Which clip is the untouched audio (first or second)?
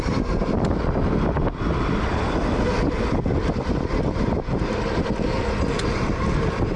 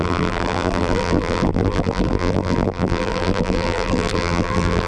first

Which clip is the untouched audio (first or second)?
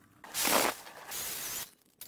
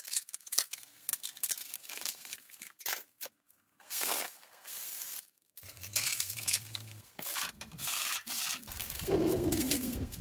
first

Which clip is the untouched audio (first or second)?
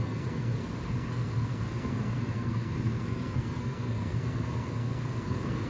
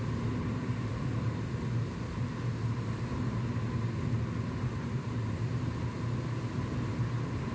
second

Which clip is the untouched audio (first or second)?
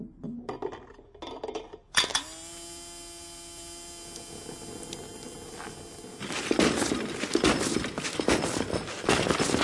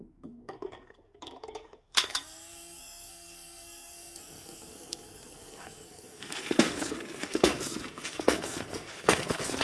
first